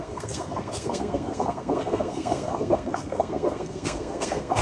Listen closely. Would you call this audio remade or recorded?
remade